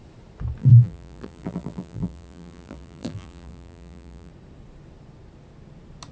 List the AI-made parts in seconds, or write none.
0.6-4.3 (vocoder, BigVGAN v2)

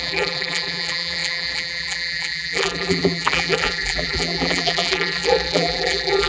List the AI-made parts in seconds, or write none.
0.0-6.3 (vocoder, BigVGAN v2)

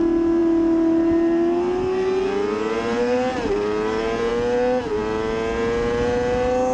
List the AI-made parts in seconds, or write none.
none

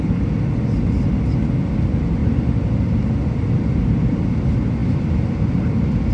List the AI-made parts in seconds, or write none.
2.2-4.3 (vocoder, BigVGAN v2); 4.8-5.6

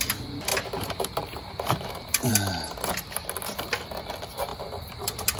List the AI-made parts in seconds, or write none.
0.5-2.3 (vocoder, BigVGAN v2); 4.5-5.0

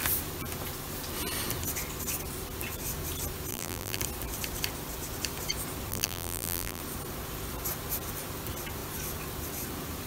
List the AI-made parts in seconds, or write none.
3.5-4.0 (vocoder, BigVGAN v2); 5.9-6.8

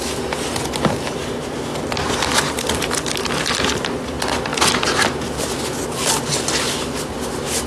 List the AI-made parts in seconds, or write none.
none

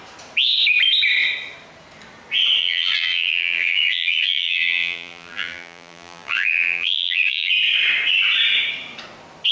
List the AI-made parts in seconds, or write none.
2.6-7.5 (vocoder, BigVGAN v2)